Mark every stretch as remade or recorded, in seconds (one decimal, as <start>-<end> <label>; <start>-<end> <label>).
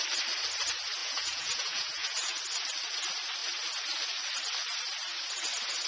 0.0-1.0 recorded; 1.0-2.4 remade; 2.4-5.9 recorded